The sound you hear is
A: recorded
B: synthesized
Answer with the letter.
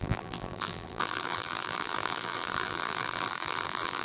B